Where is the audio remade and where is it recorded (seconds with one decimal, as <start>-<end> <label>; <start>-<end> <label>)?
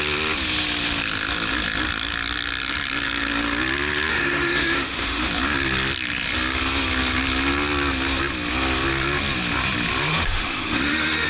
0.0-4.1 recorded; 4.1-5.3 remade; 5.3-10.1 recorded; 10.1-11.3 remade